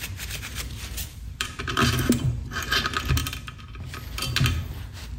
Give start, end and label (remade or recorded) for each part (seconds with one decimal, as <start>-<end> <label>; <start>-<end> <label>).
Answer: 0.0-0.5 recorded; 0.5-1.7 remade; 1.7-3.2 recorded; 3.2-3.8 remade; 3.8-5.2 recorded